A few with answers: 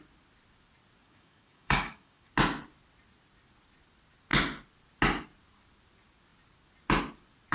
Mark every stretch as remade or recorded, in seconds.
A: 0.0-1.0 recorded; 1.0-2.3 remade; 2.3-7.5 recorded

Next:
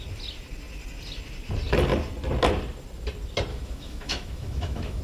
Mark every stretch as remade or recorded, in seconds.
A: 0.0-3.5 recorded; 3.5-5.0 remade

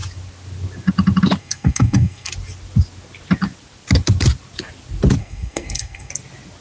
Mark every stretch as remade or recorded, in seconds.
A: 0.0-1.4 recorded; 1.4-2.3 remade; 2.3-5.2 recorded; 5.2-6.1 remade; 6.1-6.6 recorded

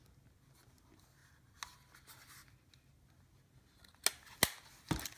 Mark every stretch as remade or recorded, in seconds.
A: 0.0-5.2 recorded